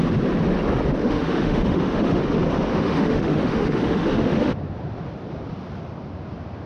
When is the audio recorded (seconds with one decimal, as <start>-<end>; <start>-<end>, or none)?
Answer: 0.0-1.0; 2.2-2.7; 4.5-6.7